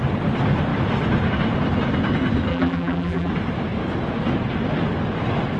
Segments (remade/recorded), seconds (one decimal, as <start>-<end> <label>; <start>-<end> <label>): 0.0-2.5 recorded; 2.5-3.3 remade; 3.3-5.6 recorded